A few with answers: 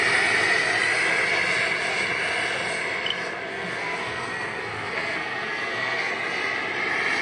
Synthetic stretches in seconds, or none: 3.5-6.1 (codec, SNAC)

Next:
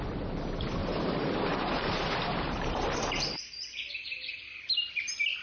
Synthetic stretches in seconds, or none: 0.8-3.9 (vocoder, BigVGAN v2)

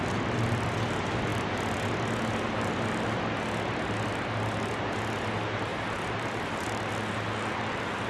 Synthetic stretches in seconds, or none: 5.7-6.9 (vocoder, BigVGAN v2)

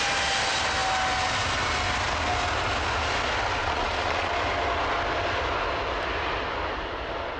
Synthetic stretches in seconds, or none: 3.6-4.3 (vocoder, Vocos)

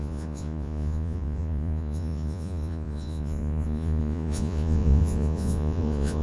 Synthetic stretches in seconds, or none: 0.0-6.2 (vocoder, Vocos)

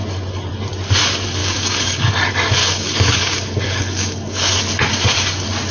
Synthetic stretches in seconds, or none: 1.4-2.1 (codec, DAC); 2.6-4.6

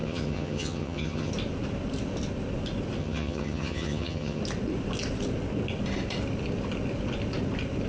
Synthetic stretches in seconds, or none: 0.0-1.3 (vocoder, HiFi-GAN); 3.0-4.4

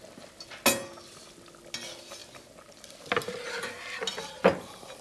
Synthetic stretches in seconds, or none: none